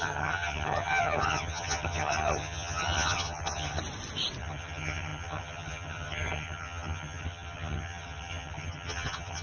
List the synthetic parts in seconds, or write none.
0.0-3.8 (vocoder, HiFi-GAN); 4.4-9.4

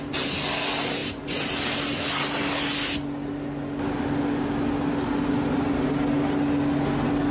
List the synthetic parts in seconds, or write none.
none